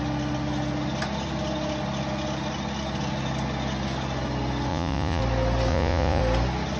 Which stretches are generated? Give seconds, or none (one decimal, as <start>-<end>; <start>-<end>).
4.7-5.2; 5.7-6.2